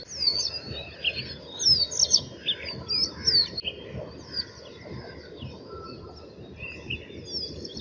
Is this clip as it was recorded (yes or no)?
yes